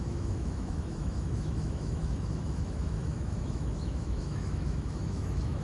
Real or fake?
fake